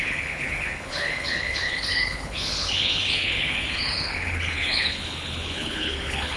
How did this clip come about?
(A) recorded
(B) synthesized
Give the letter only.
B